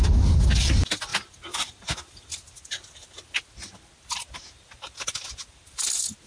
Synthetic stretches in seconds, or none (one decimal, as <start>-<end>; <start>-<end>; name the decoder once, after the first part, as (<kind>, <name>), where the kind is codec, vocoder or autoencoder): none